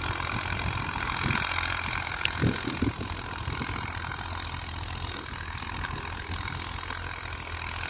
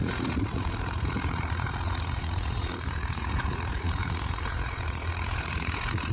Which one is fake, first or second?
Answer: second